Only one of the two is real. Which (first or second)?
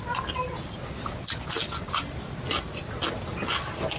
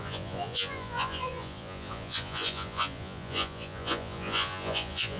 first